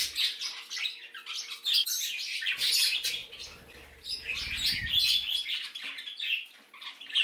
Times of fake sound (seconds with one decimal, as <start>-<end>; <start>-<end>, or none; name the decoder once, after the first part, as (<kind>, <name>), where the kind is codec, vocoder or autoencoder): none